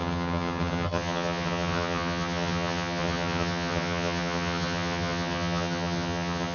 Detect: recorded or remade remade